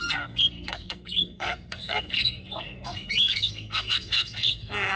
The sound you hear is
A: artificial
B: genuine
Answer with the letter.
A